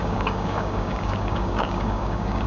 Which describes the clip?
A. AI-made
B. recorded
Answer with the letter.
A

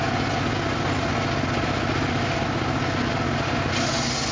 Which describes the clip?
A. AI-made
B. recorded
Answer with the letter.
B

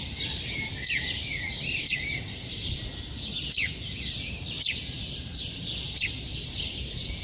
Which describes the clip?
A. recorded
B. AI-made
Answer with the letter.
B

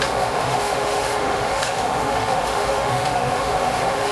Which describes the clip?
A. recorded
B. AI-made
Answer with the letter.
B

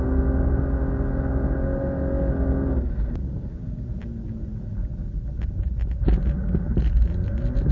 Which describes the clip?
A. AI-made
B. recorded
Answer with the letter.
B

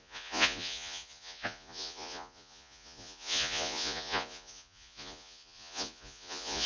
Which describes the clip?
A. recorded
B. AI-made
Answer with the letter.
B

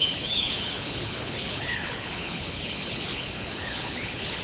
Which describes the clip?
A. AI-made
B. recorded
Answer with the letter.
A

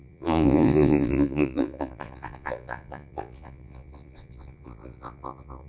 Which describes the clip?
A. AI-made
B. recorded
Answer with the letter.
A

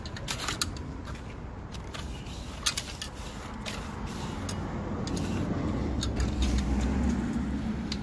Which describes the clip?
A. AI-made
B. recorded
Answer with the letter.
B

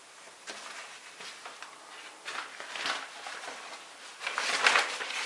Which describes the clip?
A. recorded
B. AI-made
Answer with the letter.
B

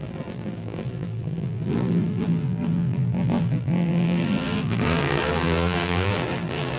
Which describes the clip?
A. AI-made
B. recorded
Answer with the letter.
A